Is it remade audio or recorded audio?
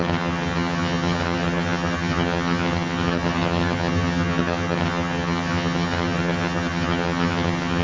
remade